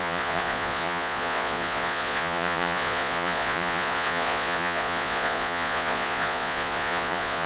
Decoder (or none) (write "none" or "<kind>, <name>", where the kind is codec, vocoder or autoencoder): vocoder, Vocos